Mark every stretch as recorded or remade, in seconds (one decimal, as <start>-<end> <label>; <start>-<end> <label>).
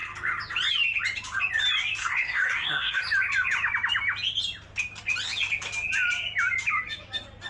0.0-2.0 recorded; 2.0-3.0 remade; 3.0-7.5 recorded